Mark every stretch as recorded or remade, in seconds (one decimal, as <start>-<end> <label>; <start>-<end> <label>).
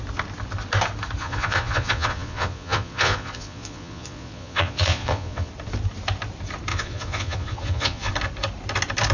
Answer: 0.0-1.2 recorded; 1.2-5.5 remade; 5.5-6.7 recorded; 6.7-8.1 remade; 8.1-9.1 recorded